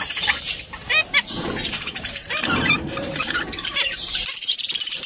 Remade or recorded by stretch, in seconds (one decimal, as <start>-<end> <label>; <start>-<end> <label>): 0.0-1.6 recorded; 1.6-5.1 remade